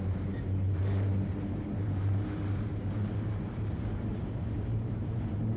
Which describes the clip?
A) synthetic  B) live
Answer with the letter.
A